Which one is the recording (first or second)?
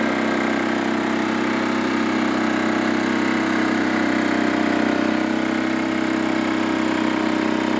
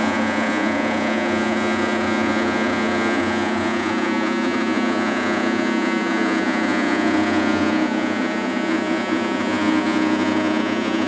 first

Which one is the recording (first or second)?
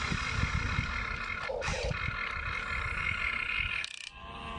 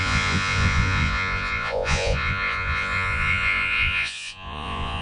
first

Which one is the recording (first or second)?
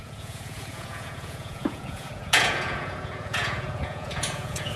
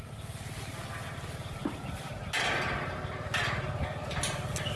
second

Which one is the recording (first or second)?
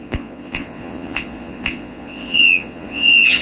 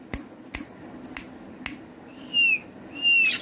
second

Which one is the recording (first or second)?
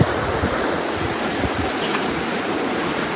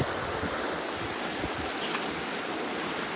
second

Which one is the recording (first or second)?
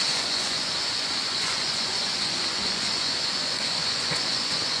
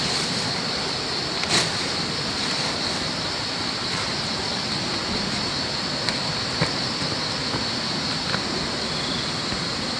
second